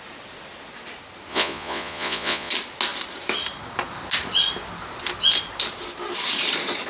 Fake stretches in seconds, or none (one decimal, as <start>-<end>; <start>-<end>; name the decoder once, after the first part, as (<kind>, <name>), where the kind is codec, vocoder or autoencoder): 1.3-2.5 (vocoder, Vocos)